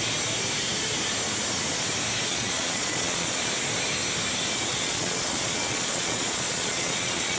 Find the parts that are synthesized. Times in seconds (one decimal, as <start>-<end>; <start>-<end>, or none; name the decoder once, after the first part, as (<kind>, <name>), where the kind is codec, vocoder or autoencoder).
2.3-3.5 (vocoder, Vocos); 4.7-7.4